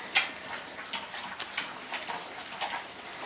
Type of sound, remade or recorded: recorded